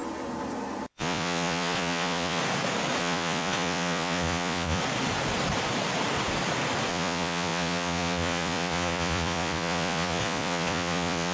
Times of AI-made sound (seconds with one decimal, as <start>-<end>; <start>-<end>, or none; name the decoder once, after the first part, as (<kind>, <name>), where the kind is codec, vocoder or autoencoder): 0.9-2.4 (vocoder, Vocos); 3.0-4.8; 6.9-11.3